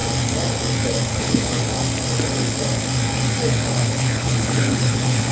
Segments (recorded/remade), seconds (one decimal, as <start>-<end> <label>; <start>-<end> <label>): 0.0-1.1 recorded; 1.1-1.6 remade; 1.6-3.7 recorded; 3.7-5.3 remade